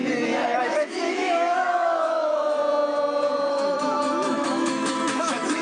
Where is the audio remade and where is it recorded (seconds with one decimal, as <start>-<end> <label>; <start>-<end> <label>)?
0.0-0.6 recorded; 0.6-2.6 remade; 2.6-3.5 recorded; 3.5-5.6 remade